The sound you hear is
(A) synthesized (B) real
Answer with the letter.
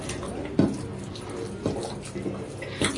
B